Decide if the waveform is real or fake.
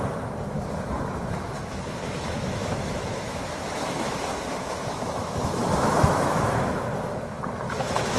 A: fake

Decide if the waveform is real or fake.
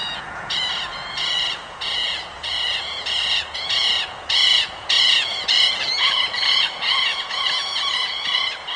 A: fake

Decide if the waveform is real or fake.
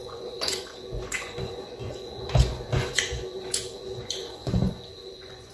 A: fake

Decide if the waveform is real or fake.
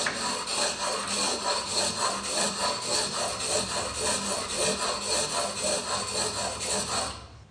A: real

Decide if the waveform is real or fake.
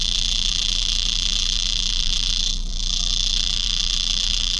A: fake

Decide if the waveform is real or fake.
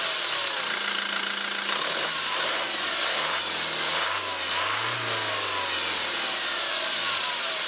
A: real